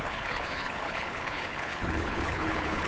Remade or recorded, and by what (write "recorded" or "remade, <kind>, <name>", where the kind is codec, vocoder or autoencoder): remade, codec, HILCodec